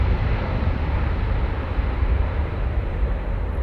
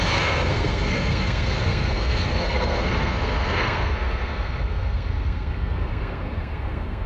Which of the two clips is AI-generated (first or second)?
second